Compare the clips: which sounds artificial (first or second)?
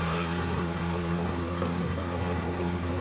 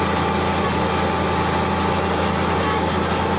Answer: first